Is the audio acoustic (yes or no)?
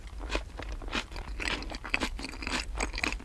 yes